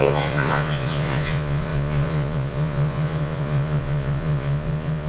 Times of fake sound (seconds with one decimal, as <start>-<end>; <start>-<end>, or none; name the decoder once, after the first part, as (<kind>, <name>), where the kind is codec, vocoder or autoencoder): 0.0-5.1 (vocoder, Vocos)